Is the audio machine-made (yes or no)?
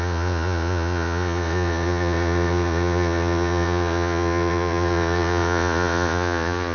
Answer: yes